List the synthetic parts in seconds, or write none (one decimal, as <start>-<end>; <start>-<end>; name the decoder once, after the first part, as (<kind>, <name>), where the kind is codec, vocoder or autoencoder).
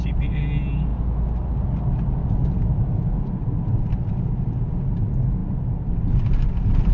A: none